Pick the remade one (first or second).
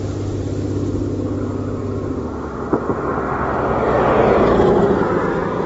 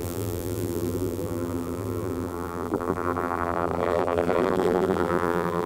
second